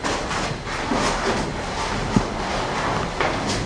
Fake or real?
real